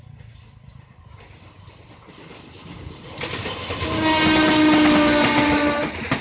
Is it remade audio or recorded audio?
recorded